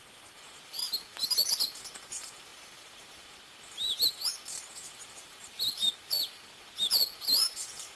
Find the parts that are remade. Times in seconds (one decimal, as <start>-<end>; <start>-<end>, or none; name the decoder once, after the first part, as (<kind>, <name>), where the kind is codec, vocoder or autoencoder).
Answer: 4.8-5.9 (vocoder, BigVGAN v2)

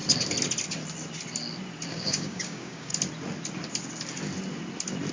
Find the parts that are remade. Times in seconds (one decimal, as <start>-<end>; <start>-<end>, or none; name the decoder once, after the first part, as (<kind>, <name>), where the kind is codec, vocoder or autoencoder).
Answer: 1.9-2.9 (codec, DAC)

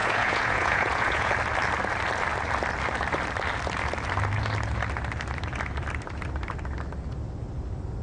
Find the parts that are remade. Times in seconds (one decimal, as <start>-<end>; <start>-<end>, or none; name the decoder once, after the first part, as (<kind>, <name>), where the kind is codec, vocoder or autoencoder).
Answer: 0.0-1.3 (vocoder, Vocos)

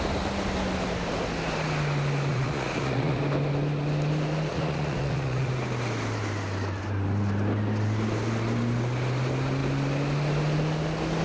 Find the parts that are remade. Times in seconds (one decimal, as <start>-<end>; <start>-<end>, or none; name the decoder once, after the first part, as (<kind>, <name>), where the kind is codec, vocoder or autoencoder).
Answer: 2.3-3.2 (vocoder, Vocos); 4.5-5.5

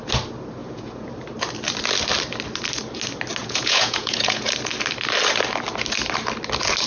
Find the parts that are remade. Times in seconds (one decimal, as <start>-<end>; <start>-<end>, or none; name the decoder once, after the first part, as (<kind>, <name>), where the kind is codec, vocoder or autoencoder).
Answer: 0.6-1.1 (vocoder, Vocos); 3.4-4.5

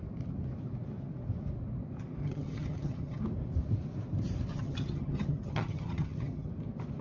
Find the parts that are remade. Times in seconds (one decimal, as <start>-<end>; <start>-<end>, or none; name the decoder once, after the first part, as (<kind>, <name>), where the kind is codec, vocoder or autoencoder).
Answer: 2.2-3.2 (vocoder, HiFi-GAN); 4.5-6.5